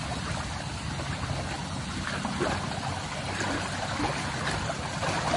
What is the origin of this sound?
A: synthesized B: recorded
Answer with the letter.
B